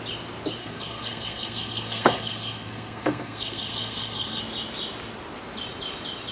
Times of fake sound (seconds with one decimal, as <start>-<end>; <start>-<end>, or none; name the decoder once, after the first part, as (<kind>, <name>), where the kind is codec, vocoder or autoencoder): 0.6-4.4 (codec, SNAC)